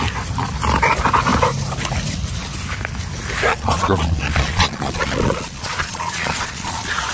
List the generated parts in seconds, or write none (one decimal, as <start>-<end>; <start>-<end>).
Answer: 3.5-7.1